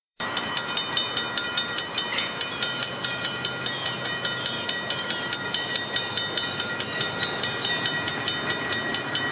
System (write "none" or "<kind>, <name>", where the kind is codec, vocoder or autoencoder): vocoder, BigVGAN v2